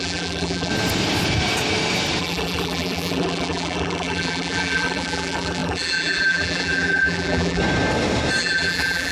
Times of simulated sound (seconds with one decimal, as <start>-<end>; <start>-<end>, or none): 0.0-0.7; 2.2-7.6; 8.4-9.1